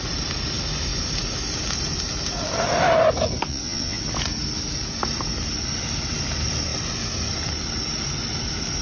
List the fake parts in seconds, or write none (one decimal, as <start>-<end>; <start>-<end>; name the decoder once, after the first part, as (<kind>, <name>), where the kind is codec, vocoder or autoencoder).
3.5-4.0 (vocoder, Vocos)